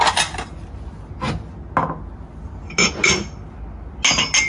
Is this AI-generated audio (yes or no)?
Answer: no